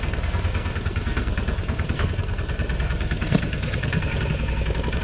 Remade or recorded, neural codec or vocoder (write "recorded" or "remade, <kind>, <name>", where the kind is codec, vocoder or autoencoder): remade, codec, SNAC